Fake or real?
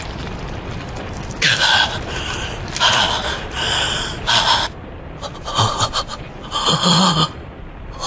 fake